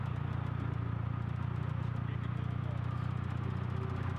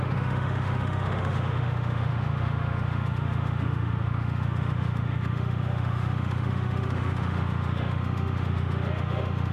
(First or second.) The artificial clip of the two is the second